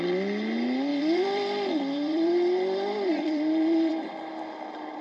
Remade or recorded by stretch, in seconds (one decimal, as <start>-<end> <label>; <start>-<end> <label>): 0.0-0.9 recorded; 0.9-3.9 remade; 3.9-5.0 recorded